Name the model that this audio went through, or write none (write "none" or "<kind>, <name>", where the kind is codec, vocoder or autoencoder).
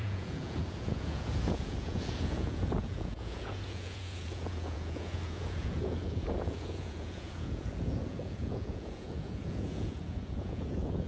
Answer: vocoder, Vocos